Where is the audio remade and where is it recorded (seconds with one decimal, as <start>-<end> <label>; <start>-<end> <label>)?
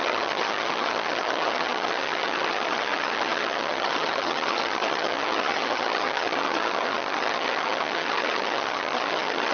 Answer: 0.0-9.5 remade